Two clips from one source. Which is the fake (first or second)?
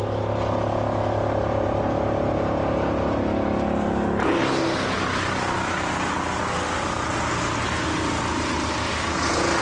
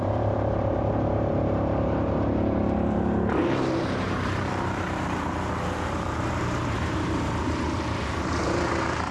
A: second